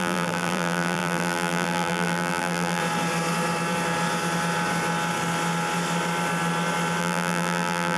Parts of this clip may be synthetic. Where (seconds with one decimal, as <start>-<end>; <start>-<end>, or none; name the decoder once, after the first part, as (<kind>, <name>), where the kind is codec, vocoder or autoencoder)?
0.0-2.8 (vocoder, BigVGAN v2); 7.0-8.0